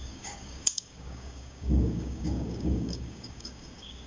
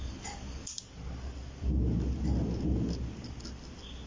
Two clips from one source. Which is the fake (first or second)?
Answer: first